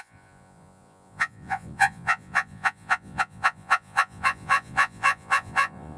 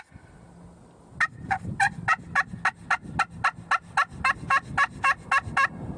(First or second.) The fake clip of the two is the first